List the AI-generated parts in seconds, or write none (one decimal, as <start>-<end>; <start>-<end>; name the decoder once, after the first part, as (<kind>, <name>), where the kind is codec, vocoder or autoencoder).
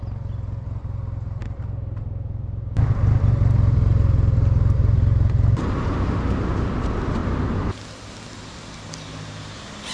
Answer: none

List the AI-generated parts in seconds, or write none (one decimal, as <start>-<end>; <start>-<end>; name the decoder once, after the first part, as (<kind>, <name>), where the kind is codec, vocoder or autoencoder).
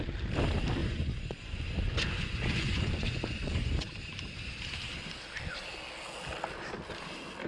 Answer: 0.8-3.9 (vocoder, Vocos)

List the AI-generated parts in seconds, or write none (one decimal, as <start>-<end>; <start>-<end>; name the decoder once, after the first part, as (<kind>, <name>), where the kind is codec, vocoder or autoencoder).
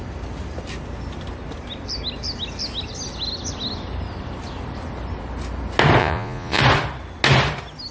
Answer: 6.0-6.6 (vocoder, Vocos)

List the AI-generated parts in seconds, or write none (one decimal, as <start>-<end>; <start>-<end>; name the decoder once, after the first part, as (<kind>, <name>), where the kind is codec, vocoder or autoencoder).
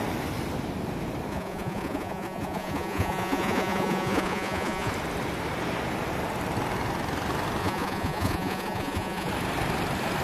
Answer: 1.3-4.9 (vocoder, Vocos); 7.6-9.3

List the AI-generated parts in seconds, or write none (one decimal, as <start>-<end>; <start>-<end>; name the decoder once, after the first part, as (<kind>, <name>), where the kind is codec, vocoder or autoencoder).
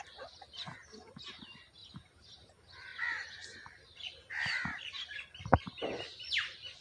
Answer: none